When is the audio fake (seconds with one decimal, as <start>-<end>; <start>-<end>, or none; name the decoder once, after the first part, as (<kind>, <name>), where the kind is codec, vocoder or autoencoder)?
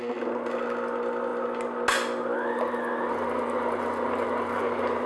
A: none